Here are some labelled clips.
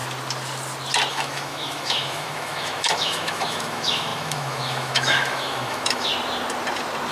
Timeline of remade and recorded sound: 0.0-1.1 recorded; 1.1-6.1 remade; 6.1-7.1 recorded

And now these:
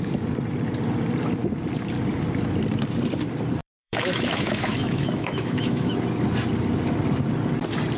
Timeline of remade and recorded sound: 0.0-3.6 recorded; 3.6-5.9 remade; 5.9-8.0 recorded

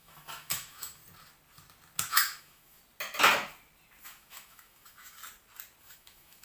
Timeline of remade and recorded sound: 0.0-1.0 remade; 1.0-2.1 recorded; 2.1-2.8 remade; 2.8-4.0 recorded; 4.0-5.2 remade; 5.2-5.8 recorded; 5.8-6.4 remade

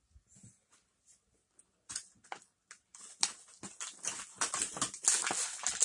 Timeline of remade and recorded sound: 0.0-5.8 recorded

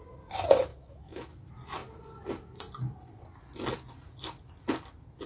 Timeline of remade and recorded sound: 0.0-0.7 recorded; 0.7-1.3 remade; 1.3-5.3 recorded

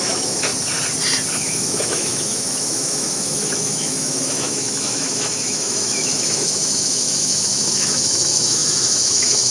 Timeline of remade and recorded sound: 0.0-0.5 remade; 0.5-1.3 recorded; 1.3-9.5 remade

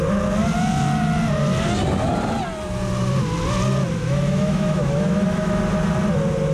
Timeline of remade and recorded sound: 0.0-4.0 recorded; 4.0-5.6 remade; 5.6-6.5 recorded